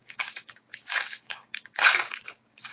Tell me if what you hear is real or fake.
fake